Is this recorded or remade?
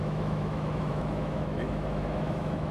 remade